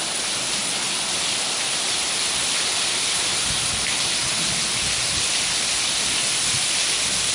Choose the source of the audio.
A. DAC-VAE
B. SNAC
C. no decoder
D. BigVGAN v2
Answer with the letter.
C